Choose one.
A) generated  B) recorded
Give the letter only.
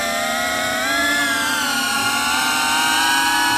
B